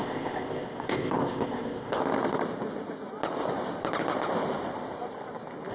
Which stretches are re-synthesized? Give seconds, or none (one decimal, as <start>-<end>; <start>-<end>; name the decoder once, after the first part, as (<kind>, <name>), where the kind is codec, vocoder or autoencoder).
0.0-2.0 (codec, ZipCodec)